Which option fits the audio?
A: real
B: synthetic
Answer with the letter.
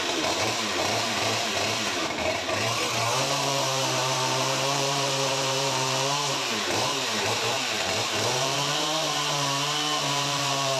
B